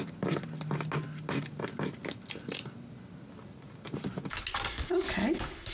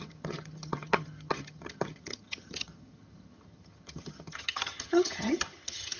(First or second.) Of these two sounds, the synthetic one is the second